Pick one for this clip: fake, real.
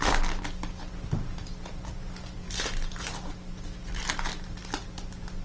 real